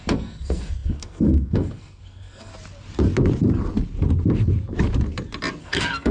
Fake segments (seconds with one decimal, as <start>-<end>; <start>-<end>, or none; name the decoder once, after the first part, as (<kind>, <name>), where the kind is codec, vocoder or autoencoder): 0.0-2.5 (codec, SNAC); 5.6-6.1

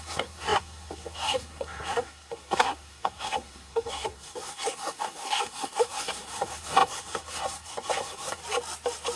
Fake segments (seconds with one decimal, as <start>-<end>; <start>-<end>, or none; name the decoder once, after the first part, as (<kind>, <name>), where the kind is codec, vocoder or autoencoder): 0.0-8.4 (codec, SNAC)